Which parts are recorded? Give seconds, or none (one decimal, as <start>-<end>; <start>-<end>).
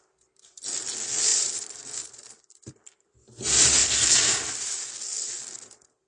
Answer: 0.0-1.3; 2.7-6.1